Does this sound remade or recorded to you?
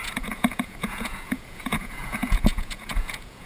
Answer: remade